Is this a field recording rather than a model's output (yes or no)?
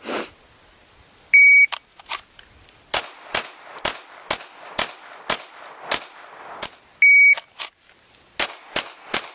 yes